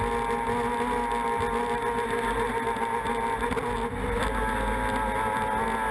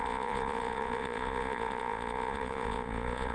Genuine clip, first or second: first